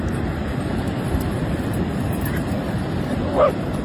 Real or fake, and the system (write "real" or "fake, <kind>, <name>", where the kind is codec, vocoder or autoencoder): fake, vocoder, BigVGAN v2